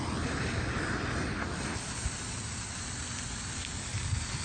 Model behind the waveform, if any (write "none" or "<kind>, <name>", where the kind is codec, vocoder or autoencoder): none